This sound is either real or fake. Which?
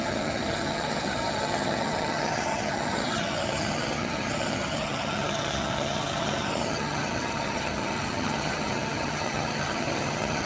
fake